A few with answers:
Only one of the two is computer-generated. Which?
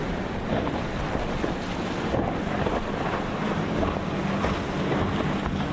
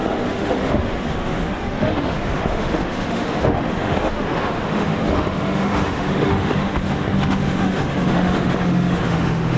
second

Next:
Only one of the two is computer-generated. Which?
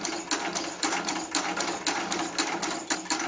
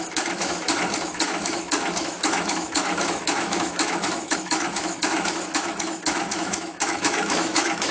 second